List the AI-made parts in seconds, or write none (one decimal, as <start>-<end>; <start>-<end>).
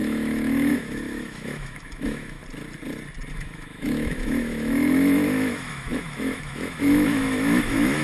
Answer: 0.0-2.4; 3.3-8.0